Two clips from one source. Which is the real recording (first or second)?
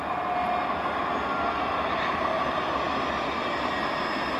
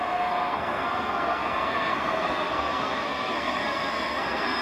first